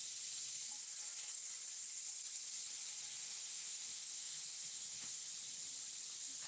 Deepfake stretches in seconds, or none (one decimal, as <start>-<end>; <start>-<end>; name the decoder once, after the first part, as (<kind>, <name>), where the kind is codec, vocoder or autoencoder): 3.2-5.3 (autoencoder, DAC-VAE)